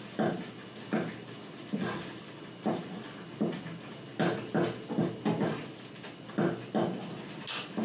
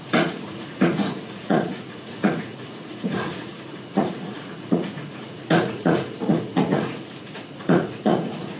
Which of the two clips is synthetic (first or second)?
second